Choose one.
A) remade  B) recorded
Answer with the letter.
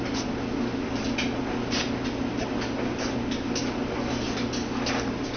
B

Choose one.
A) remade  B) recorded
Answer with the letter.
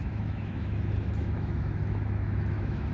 A